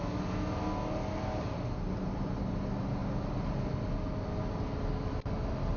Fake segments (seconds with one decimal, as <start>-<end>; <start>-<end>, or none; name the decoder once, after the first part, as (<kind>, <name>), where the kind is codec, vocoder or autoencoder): none